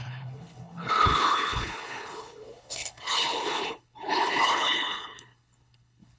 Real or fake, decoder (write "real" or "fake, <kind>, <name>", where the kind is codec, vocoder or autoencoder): fake, codec, HILCodec